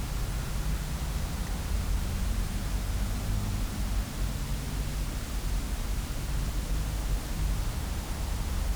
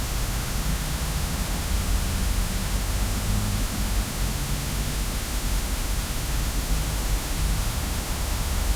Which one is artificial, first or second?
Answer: second